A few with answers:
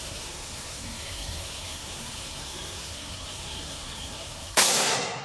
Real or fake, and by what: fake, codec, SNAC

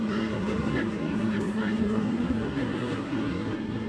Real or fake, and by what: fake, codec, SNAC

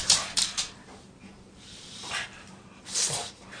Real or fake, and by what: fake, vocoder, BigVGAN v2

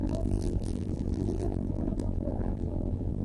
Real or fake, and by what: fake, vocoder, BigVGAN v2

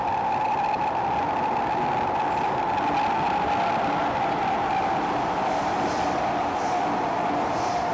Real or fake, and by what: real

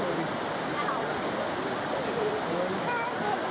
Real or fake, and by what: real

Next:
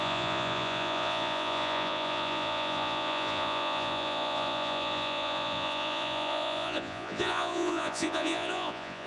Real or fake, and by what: fake, vocoder, Vocos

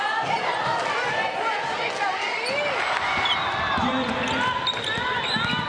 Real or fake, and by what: real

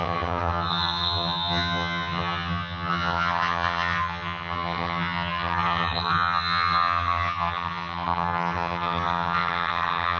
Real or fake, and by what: fake, vocoder, HiFi-GAN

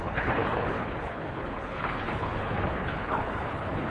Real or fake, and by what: fake, codec, HILCodec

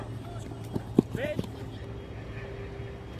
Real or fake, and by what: real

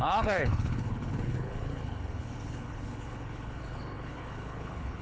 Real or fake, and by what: fake, codec, HILCodec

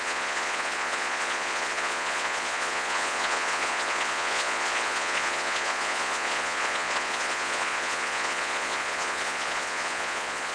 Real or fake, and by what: fake, vocoder, Vocos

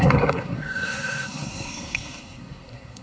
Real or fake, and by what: fake, codec, SNAC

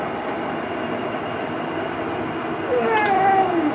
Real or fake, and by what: real